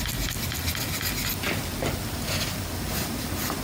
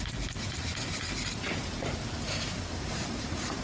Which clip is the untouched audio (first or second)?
first